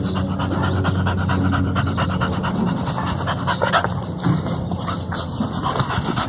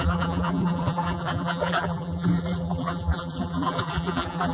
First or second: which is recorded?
first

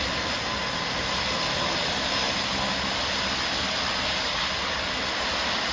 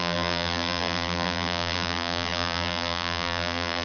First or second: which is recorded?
first